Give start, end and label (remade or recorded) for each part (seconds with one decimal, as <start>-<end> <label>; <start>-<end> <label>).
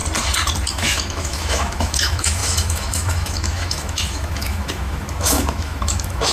0.0-0.7 recorded; 0.7-6.3 remade